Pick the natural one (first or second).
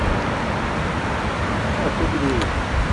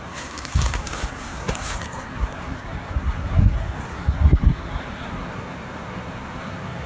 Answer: first